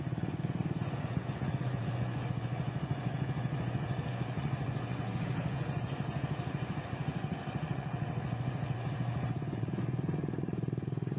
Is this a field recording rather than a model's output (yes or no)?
no